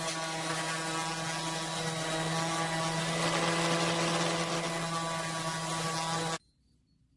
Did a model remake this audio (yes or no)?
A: no